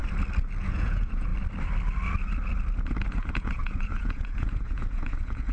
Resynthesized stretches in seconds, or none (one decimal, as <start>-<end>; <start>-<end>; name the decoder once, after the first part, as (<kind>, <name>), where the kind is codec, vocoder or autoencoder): 0.6-1.3 (vocoder, Vocos); 3.1-5.5